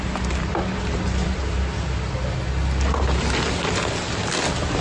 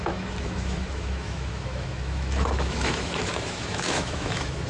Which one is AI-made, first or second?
second